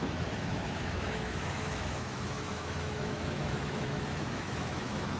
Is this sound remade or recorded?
remade